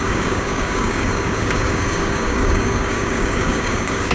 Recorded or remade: remade